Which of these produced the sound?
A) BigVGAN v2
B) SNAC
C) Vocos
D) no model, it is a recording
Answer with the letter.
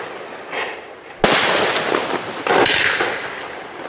D